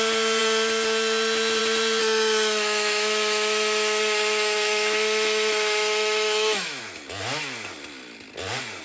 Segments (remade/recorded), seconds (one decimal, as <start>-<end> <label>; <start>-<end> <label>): 0.0-2.0 recorded; 2.0-6.8 remade; 6.8-8.8 recorded